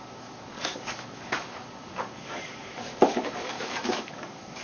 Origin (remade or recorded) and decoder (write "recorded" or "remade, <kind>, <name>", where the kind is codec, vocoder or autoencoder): remade, codec, DAC